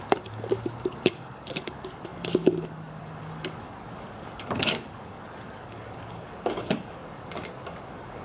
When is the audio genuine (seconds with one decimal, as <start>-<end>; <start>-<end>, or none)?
none